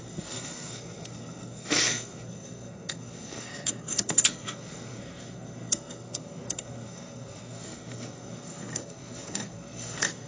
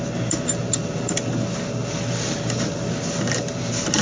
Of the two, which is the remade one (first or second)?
first